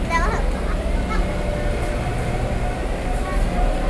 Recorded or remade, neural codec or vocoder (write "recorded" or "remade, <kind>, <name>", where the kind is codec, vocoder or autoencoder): recorded